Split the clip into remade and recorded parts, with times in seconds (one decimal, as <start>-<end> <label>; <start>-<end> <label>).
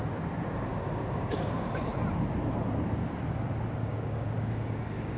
0.0-0.7 recorded; 0.7-1.8 remade; 1.8-3.8 recorded; 3.8-5.2 remade